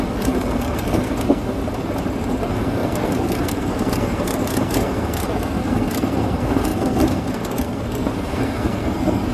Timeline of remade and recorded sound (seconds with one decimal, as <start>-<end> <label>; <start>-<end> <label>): 0.0-1.6 remade; 1.6-2.4 recorded; 2.4-9.3 remade